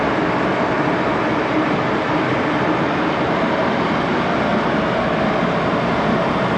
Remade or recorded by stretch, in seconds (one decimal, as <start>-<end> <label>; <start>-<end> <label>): 0.0-0.5 recorded; 0.5-4.5 remade; 4.5-6.6 recorded